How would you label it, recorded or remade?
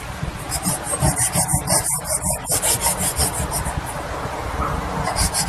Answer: recorded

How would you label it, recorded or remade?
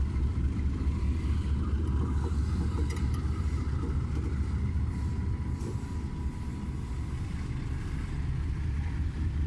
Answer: recorded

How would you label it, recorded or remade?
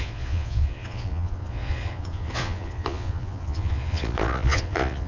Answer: remade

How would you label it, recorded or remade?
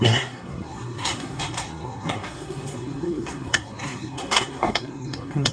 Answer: remade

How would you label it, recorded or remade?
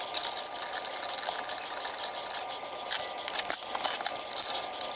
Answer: recorded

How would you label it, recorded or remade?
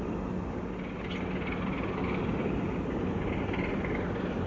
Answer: recorded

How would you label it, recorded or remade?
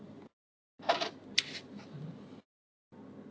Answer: recorded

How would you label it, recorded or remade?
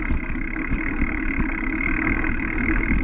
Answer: recorded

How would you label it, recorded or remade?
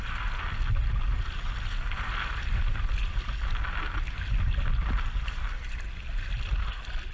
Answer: recorded